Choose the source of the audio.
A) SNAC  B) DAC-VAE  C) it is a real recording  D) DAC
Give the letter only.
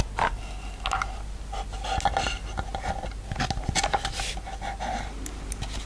C